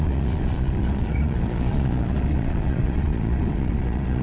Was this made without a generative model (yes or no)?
no